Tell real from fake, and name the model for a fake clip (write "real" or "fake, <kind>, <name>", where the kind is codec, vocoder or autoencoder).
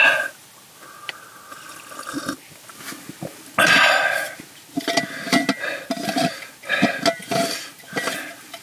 real